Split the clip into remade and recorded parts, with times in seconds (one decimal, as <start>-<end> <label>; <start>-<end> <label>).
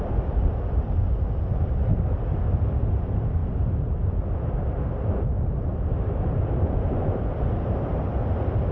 0.0-8.7 recorded